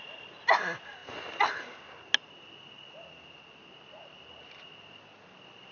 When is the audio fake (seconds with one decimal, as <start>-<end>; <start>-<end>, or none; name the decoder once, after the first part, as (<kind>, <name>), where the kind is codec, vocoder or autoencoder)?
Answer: none